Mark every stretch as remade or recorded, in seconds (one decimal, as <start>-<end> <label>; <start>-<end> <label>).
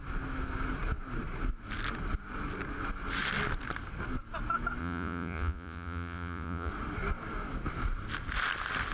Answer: 0.0-4.8 recorded; 4.8-6.7 remade; 6.7-8.9 recorded